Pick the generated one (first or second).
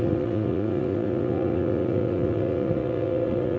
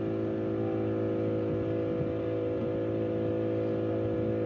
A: first